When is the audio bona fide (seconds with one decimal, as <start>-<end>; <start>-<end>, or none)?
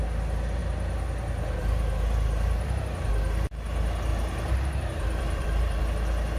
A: 0.0-4.1; 5.8-6.4